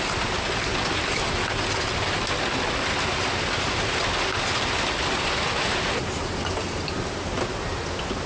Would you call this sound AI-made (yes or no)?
no